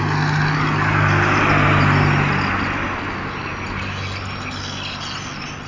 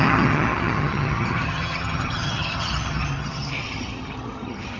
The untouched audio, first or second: first